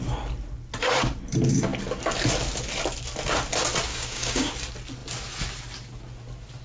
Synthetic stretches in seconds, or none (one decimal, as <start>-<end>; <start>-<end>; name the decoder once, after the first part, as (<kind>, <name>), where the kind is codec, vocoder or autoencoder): 3.9-4.5 (codec, DAC)